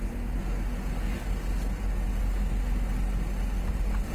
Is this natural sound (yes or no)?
yes